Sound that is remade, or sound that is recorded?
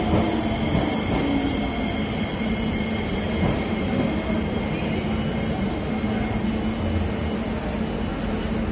recorded